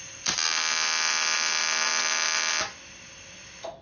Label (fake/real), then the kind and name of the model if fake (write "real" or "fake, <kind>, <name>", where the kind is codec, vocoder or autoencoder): real